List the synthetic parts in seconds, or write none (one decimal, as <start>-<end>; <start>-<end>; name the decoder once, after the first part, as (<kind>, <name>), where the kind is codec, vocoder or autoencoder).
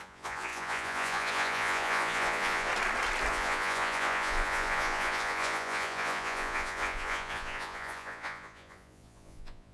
0.0-2.7 (vocoder, Vocos); 3.3-9.7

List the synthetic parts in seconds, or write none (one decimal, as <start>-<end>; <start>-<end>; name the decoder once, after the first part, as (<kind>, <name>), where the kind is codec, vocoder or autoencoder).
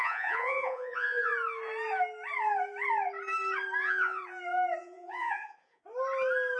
0.0-1.3 (vocoder, Vocos); 3.8-4.2; 4.8-5.8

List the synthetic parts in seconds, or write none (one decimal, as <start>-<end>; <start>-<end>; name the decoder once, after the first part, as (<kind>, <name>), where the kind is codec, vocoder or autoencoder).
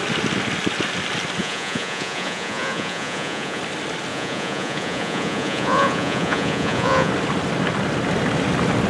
1.4-3.6 (vocoder, Vocos); 4.1-7.1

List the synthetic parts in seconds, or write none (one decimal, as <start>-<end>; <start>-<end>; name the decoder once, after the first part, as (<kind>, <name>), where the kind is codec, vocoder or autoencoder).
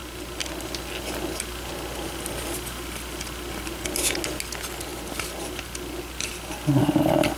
none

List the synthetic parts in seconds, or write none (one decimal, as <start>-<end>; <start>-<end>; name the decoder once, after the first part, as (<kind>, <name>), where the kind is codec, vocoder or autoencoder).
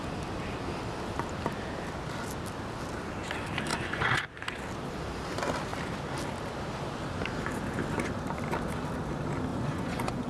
3.7-4.2 (vocoder, Vocos); 9.5-10.3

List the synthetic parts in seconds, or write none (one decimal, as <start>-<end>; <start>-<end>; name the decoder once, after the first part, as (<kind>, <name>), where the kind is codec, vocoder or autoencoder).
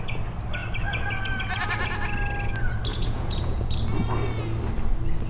2.9-3.7 (vocoder, Vocos)